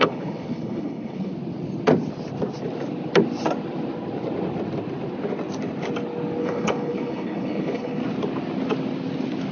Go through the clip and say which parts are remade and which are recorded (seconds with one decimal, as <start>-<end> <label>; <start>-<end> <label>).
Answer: 0.0-1.3 remade; 1.3-6.4 recorded; 6.4-8.0 remade; 8.0-9.5 recorded